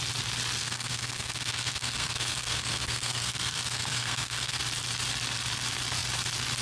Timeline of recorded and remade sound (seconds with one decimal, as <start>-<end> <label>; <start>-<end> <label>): 0.0-0.6 recorded; 0.6-4.6 remade; 4.6-6.6 recorded